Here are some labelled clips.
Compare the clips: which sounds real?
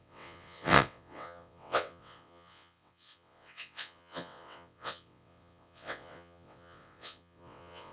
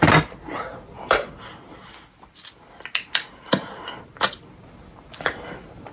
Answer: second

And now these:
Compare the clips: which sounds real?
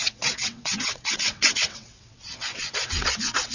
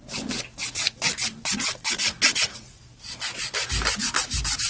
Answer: second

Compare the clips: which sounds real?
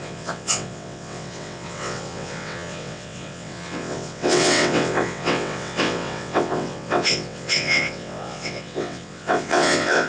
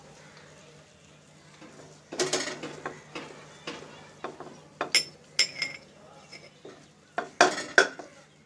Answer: second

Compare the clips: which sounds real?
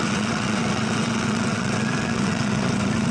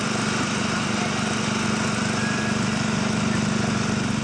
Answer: second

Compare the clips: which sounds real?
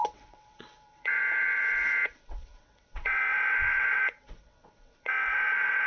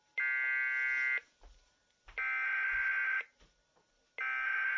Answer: second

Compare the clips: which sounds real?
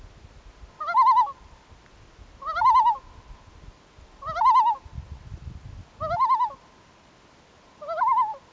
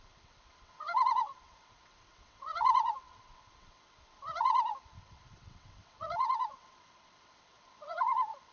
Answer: first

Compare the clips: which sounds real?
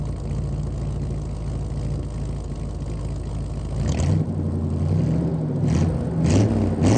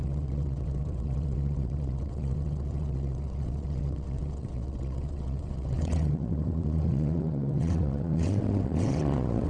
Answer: first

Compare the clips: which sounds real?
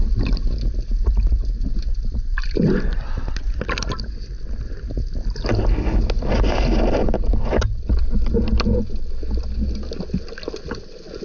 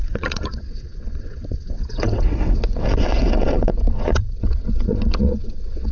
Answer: first